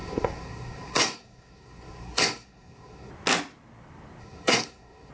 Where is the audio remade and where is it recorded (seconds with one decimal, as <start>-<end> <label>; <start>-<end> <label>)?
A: 0.0-3.1 remade; 3.1-4.2 recorded; 4.2-5.1 remade